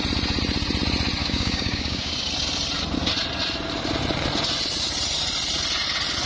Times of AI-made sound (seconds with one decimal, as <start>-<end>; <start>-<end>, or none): 1.2-2.1